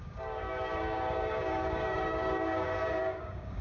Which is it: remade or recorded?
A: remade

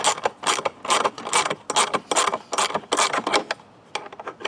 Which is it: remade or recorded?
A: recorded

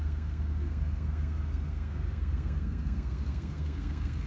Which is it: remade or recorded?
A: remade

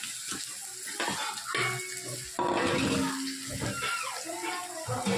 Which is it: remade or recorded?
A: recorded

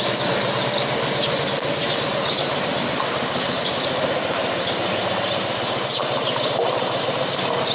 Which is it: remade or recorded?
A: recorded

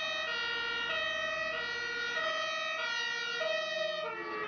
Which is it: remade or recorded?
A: recorded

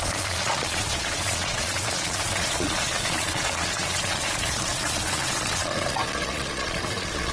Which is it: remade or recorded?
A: remade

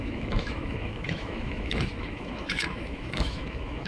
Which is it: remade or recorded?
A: remade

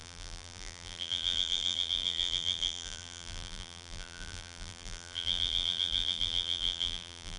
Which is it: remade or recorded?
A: remade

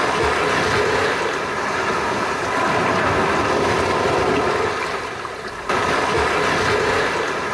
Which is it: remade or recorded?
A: recorded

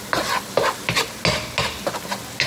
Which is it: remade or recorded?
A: recorded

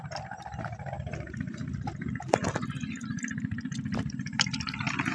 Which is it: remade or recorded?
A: recorded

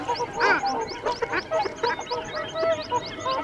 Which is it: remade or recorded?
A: recorded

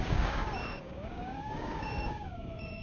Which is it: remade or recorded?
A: remade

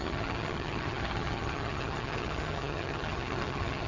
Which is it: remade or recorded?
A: remade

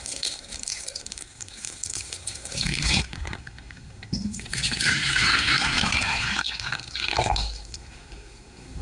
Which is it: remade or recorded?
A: remade